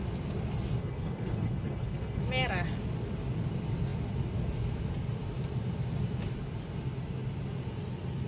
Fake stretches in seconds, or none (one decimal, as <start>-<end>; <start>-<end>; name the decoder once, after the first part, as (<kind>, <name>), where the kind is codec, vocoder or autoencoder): 0.8-2.2 (codec, HILCodec)